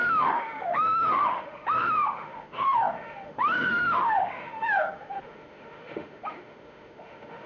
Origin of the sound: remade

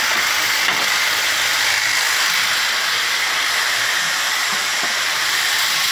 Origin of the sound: recorded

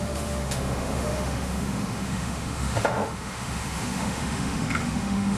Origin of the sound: remade